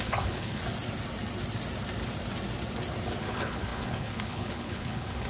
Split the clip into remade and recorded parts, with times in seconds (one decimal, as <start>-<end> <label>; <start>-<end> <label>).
0.0-0.6 remade; 0.6-3.2 recorded; 3.2-5.3 remade